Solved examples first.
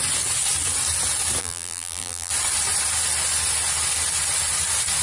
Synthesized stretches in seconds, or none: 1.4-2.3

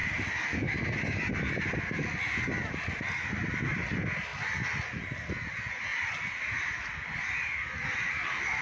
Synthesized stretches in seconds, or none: none

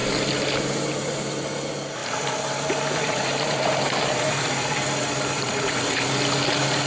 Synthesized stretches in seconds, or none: 2.0-6.1

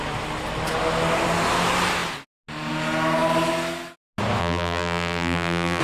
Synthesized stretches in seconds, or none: 4.4-5.8